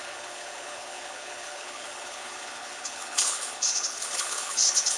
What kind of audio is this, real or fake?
fake